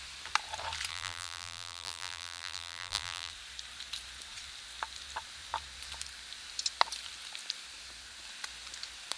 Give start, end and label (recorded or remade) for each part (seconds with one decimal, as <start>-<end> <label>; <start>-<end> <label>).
0.0-0.9 recorded; 0.9-3.3 remade; 3.3-9.2 recorded